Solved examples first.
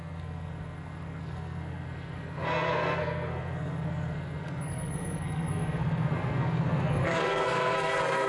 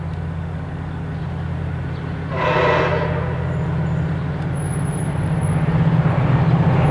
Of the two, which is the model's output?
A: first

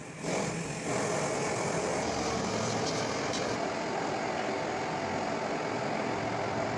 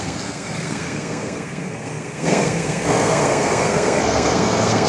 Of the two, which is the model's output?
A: second